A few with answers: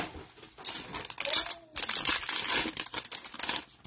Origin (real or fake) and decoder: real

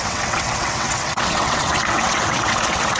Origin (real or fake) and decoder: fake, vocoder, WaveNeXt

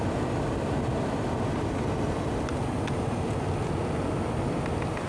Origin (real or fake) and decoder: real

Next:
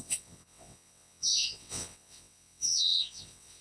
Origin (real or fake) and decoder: fake, vocoder, WaveNeXt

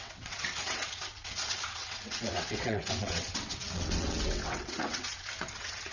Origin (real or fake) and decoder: fake, vocoder, WaveNeXt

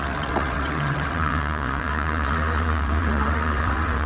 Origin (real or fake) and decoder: fake, vocoder, WaveNeXt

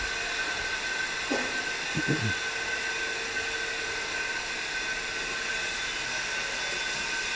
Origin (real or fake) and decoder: real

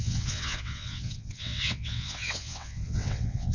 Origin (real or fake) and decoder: fake, vocoder, WaveNeXt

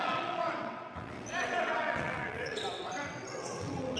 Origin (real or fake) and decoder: fake, vocoder, WaveNeXt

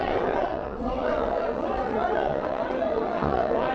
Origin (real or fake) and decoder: fake, vocoder, WaveNeXt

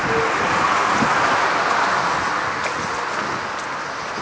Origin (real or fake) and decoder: real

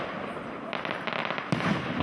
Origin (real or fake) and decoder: real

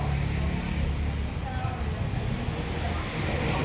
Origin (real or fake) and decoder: real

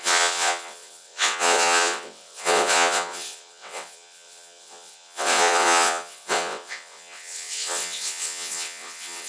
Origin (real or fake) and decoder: fake, vocoder, WaveNeXt